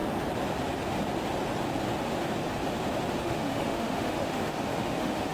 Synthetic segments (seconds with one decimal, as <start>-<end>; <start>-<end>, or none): 3.2-5.3